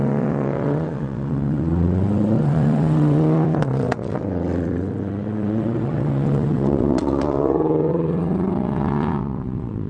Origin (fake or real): fake